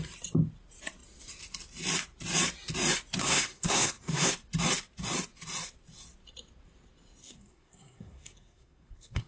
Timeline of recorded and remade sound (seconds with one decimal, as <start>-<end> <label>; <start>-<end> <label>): 0.0-3.2 recorded; 3.2-4.3 remade; 4.3-7.2 recorded; 7.2-9.3 remade